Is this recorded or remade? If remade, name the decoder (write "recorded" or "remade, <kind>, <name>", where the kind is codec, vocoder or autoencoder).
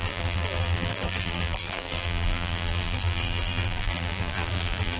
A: remade, vocoder, BigVGAN v2